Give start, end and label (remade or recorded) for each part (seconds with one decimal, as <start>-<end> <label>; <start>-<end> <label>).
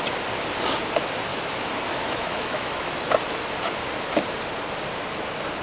0.0-1.3 recorded; 1.3-3.4 remade; 3.4-5.6 recorded